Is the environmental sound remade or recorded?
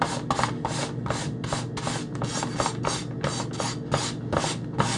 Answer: recorded